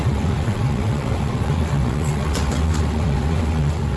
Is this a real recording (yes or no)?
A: no